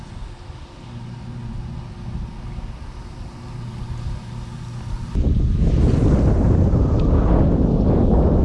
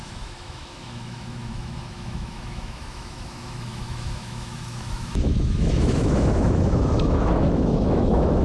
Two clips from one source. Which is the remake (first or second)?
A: second